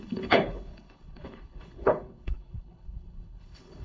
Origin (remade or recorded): remade